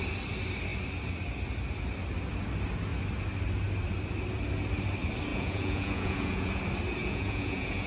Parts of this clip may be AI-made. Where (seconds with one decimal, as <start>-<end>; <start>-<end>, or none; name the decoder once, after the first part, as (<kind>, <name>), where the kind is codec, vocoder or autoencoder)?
5.3-6.6 (vocoder, Vocos); 7.0-7.9

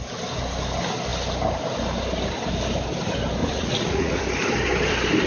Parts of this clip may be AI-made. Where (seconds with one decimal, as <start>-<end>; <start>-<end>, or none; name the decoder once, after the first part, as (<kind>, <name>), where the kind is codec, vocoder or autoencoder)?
3.4-4.2 (vocoder, Vocos)

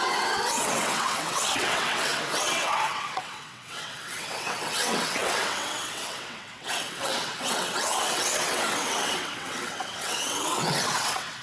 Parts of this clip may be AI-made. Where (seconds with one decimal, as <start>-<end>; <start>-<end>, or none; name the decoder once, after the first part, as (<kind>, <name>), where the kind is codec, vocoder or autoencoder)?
0.0-11.4 (vocoder, WaveNeXt)

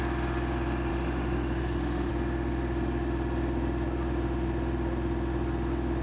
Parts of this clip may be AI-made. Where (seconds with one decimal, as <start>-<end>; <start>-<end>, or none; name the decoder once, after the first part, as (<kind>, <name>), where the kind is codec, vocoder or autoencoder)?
0.9-2.1 (autoencoder, DAC-VAE)

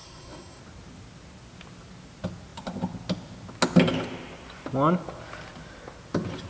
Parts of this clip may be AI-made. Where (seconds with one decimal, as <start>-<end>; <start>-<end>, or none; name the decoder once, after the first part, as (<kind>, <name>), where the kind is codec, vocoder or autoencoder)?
0.0-0.6 (codec, SNAC)

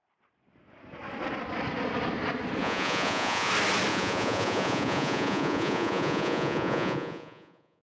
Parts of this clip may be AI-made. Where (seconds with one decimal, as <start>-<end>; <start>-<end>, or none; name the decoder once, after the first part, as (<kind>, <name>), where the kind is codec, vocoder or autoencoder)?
2.6-3.5 (vocoder, Vocos); 3.9-8.0

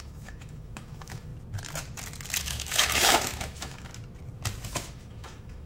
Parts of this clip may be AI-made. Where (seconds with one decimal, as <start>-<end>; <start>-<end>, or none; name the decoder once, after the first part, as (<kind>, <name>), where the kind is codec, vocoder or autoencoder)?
0.0-1.3 (autoencoder, DAC-VAE); 2.4-3.9; 4.7-5.7

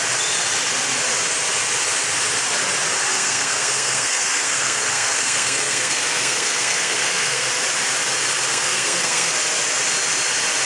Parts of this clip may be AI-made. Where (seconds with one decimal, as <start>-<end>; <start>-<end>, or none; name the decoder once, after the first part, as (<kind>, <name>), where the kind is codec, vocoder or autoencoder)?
3.1-7.5 (codec, SNAC); 8.5-9.3